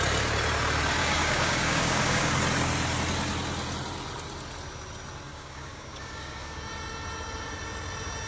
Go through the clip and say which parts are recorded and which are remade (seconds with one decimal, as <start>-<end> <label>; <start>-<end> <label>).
0.0-1.0 recorded; 1.0-2.3 remade; 2.3-5.3 recorded; 5.3-6.6 remade; 6.6-8.3 recorded